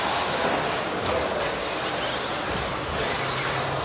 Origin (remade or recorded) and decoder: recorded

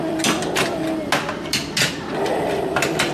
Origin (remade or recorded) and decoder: recorded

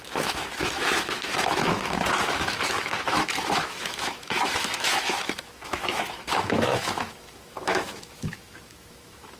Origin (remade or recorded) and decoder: remade, autoencoder, DAC-VAE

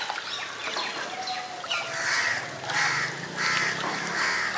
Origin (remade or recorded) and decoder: recorded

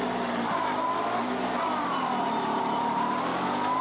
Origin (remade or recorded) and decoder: recorded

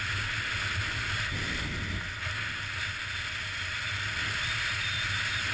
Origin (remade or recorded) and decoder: recorded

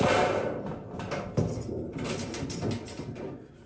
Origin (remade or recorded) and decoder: recorded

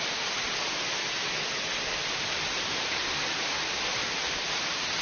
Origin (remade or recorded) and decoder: recorded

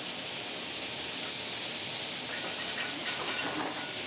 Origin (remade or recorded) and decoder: recorded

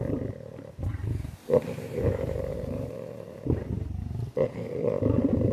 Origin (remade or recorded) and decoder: remade, vocoder, BigVGAN v2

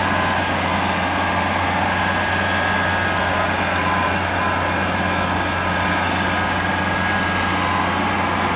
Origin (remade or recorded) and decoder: recorded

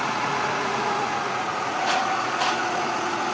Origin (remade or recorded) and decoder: remade, vocoder, Vocos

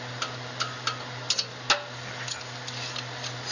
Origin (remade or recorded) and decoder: recorded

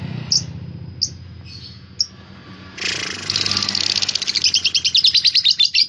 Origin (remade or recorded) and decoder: recorded